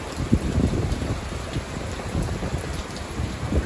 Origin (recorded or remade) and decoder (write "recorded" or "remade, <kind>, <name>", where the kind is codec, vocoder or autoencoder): recorded